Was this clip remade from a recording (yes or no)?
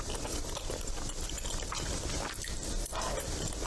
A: yes